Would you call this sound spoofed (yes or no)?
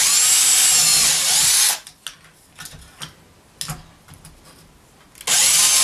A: no